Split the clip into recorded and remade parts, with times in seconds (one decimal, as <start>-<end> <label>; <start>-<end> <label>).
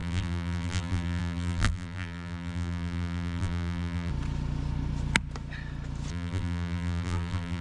0.0-4.1 remade; 4.1-6.1 recorded; 6.1-7.6 remade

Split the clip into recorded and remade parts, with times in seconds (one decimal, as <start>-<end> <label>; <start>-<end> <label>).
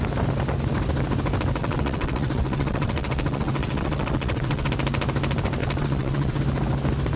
0.0-1.6 recorded; 1.6-4.7 remade; 4.7-5.6 recorded; 5.6-6.4 remade; 6.4-7.2 recorded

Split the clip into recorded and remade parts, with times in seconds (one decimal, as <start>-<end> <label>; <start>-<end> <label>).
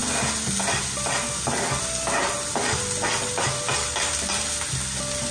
0.0-5.3 recorded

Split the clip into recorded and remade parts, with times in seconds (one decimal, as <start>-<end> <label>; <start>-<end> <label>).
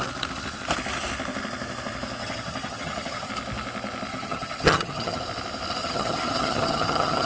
0.0-2.2 recorded; 2.2-3.3 remade; 3.3-4.1 recorded; 4.1-5.2 remade; 5.2-5.8 recorded; 5.8-7.3 remade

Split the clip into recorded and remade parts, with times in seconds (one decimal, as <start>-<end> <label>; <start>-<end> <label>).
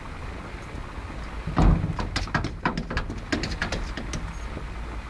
0.0-5.1 recorded